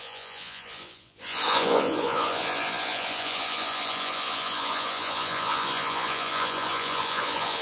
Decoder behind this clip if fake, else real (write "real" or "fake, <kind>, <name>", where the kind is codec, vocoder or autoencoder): fake, vocoder, Vocos